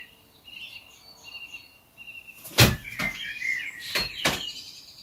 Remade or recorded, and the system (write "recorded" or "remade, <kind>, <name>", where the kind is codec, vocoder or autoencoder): recorded